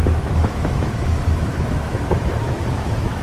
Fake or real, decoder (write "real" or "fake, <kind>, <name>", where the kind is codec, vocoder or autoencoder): fake, autoencoder, DAC-VAE